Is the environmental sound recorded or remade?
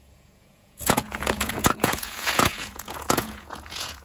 remade